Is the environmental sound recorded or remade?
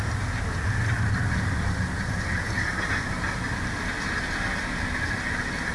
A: recorded